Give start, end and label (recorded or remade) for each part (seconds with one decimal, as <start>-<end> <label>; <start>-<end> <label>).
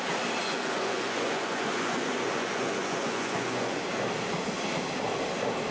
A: 0.0-0.4 recorded; 0.4-3.8 remade; 3.8-5.7 recorded